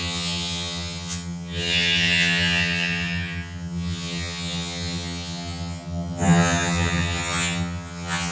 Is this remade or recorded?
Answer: remade